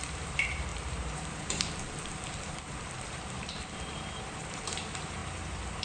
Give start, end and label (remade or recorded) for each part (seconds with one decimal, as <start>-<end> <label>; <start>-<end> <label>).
0.0-5.8 remade